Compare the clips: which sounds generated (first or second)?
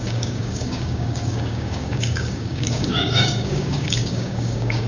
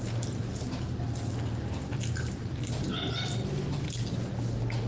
first